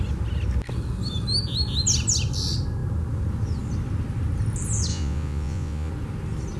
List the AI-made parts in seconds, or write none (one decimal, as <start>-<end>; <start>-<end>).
4.9-5.9